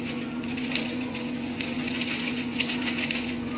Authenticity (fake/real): fake